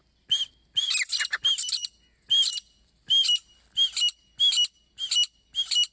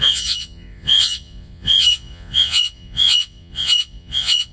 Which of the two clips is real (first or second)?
first